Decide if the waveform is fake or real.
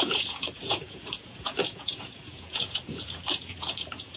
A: fake